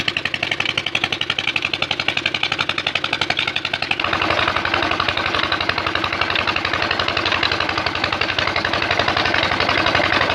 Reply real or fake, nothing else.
real